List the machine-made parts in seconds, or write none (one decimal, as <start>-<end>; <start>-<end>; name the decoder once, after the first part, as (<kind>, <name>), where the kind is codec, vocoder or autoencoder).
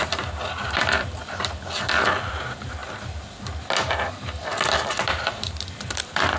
0.0-2.8 (vocoder, BigVGAN v2); 3.6-6.4